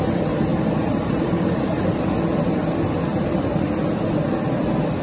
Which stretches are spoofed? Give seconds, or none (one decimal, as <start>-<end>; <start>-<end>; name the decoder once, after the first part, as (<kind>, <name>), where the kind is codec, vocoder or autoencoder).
0.5-2.0 (vocoder, BigVGAN v2); 3.1-3.7

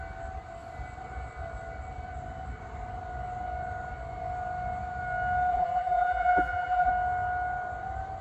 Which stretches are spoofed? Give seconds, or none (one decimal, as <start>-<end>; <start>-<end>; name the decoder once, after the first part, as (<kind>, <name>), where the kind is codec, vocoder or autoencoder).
5.5-6.9 (vocoder, BigVGAN v2)